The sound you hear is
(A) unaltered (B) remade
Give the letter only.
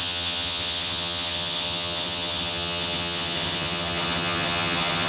B